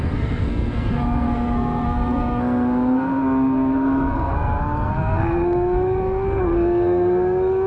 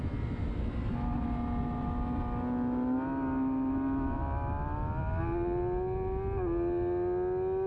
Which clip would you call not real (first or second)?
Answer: first